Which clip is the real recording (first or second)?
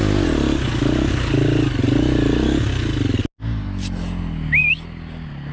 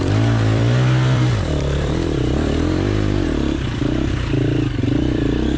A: first